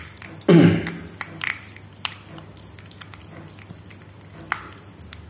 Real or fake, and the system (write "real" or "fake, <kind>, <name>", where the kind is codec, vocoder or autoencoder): real